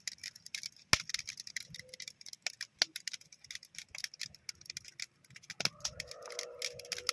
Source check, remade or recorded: recorded